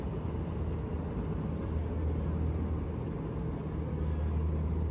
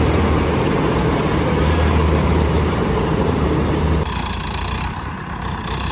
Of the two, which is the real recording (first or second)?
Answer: first